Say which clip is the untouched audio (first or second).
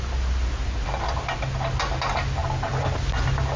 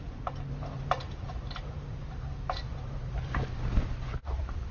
first